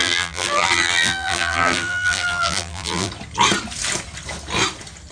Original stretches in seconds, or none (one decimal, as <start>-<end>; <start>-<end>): 3.1-5.1